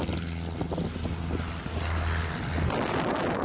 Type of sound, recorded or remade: recorded